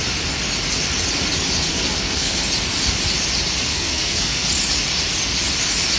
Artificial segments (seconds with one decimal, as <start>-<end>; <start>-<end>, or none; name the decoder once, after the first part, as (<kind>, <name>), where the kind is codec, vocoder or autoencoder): 1.7-2.4 (codec, SNAC); 3.7-4.5